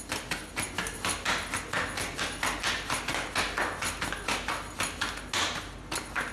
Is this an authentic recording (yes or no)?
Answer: yes